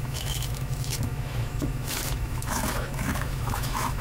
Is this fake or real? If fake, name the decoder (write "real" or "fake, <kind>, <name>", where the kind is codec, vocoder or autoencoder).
fake, autoencoder, DAC-VAE